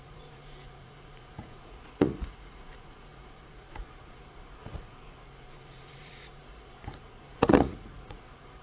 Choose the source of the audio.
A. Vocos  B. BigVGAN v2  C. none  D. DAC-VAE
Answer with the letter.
A